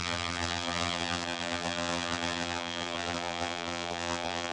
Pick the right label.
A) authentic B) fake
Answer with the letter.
B